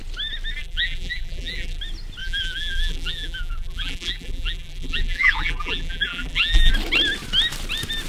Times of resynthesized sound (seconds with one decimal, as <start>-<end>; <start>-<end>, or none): 0.6-1.8; 2.2-6.7

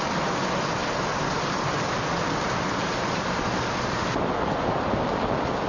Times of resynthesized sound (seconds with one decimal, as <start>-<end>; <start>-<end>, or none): 0.8-4.2

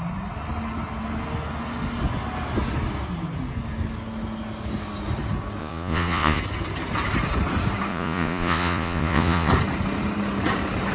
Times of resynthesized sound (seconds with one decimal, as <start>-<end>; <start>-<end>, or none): 5.6-6.4; 7.9-9.5

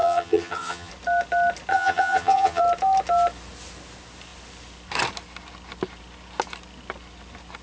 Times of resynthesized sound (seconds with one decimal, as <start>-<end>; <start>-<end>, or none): 0.0-0.9; 1.7-2.6

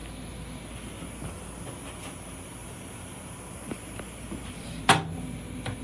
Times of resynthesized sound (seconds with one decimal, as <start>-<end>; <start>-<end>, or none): 2.6-4.8